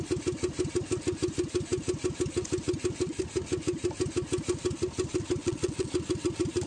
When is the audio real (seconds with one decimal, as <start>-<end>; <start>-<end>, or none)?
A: 0.0-5.4; 5.9-6.7